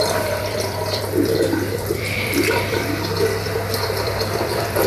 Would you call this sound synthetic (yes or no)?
yes